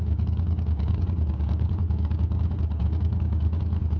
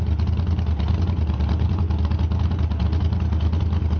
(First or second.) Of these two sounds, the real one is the second